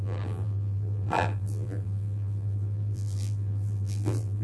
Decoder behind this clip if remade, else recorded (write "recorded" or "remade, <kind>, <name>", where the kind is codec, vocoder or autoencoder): remade, vocoder, BigVGAN v2